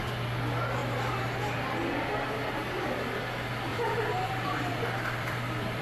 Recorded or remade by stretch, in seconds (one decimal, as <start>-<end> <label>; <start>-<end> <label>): 0.0-3.7 recorded; 3.7-5.8 remade